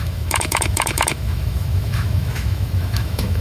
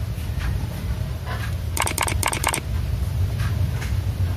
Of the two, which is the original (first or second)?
second